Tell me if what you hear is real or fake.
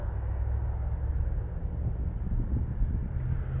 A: real